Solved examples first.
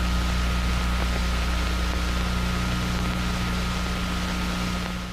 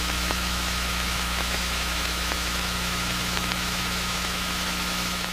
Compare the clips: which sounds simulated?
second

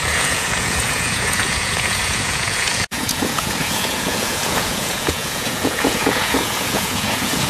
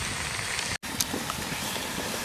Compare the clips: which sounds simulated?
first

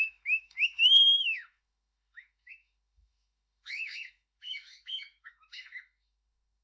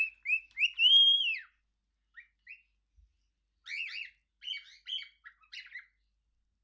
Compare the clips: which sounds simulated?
first